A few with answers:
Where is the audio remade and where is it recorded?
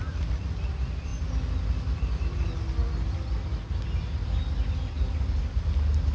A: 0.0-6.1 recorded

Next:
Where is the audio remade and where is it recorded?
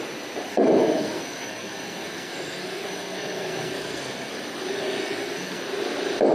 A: 0.0-0.5 recorded; 0.5-4.3 remade; 4.3-4.7 recorded; 4.7-5.6 remade; 5.6-6.3 recorded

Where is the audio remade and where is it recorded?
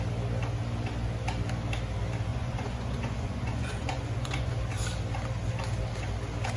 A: 0.0-2.3 recorded; 2.3-4.5 remade; 4.5-6.6 recorded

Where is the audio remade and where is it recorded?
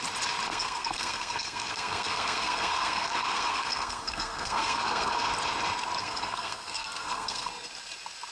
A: 0.0-0.5 recorded; 0.5-5.3 remade; 5.3-6.0 recorded; 6.0-7.5 remade; 7.5-8.3 recorded